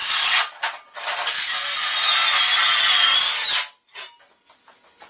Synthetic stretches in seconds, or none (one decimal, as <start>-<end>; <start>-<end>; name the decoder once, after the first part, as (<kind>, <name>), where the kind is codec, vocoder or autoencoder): none